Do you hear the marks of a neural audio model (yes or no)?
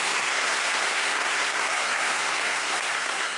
yes